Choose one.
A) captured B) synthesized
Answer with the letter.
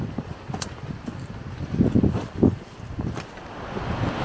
A